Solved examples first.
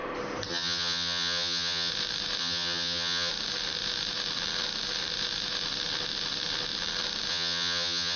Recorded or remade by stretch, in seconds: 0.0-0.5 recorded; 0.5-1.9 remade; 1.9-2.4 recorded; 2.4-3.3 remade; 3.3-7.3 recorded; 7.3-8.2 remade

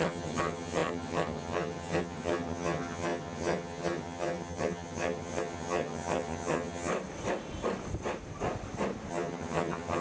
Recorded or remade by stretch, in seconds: 0.0-6.9 remade; 6.9-9.1 recorded; 9.1-10.0 remade

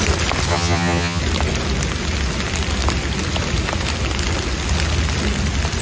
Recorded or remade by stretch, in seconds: 0.0-0.5 recorded; 0.5-1.2 remade; 1.2-5.8 recorded